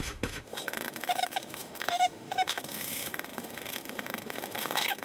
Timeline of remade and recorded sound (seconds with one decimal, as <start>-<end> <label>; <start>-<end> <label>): 0.0-5.0 remade